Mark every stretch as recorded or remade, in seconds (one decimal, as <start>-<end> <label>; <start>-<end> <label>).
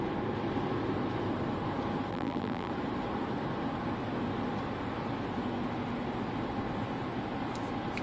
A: 0.0-2.1 recorded; 2.1-2.7 remade; 2.7-8.0 recorded